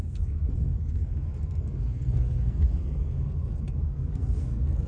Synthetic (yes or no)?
yes